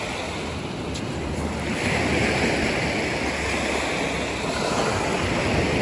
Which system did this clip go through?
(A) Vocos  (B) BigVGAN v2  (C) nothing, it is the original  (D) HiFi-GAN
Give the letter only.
C